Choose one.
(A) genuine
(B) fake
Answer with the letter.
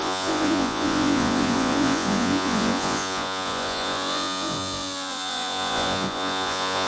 B